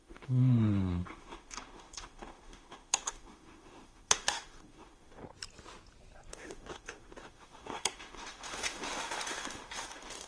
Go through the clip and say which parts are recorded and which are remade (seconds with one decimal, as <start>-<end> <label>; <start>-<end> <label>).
0.0-5.2 remade; 5.2-6.3 recorded; 6.3-10.3 remade